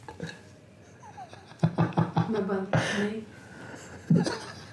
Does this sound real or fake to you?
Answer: real